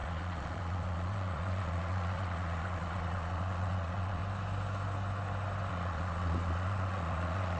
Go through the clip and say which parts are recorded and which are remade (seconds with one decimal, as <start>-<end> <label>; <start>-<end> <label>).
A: 0.0-4.2 remade; 4.2-5.7 recorded; 5.7-7.6 remade

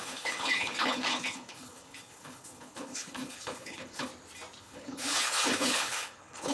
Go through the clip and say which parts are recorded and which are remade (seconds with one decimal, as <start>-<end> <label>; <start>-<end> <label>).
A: 0.0-4.1 remade; 4.1-4.6 recorded; 4.6-6.5 remade

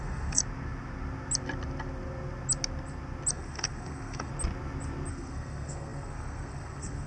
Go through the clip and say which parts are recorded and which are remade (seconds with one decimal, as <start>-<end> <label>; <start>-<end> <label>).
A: 0.0-0.4 remade; 0.4-3.3 recorded; 3.3-4.3 remade; 4.3-5.1 recorded; 5.1-7.1 remade